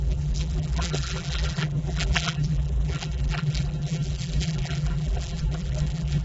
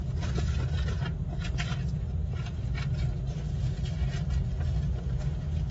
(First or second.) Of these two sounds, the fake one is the first